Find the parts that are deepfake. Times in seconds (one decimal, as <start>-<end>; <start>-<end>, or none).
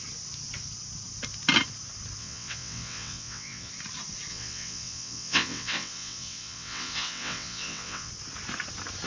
2.2-3.7; 4.3-8.1